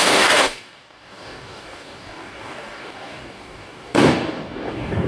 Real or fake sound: fake